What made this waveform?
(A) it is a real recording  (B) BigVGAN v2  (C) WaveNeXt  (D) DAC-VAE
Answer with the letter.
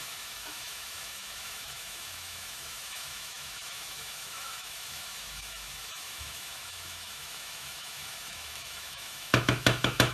D